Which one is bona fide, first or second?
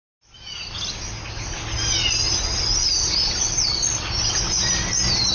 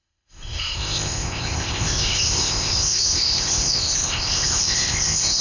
first